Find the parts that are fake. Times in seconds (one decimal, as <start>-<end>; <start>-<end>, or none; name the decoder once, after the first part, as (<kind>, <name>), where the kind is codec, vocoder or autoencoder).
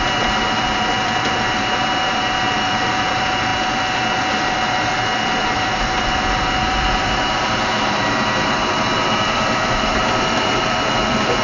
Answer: 0.0-11.4 (vocoder, BigVGAN v2)